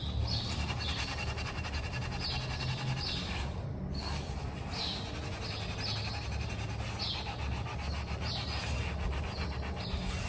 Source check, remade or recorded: recorded